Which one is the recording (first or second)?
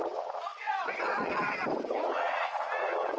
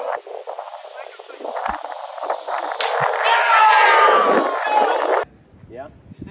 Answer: second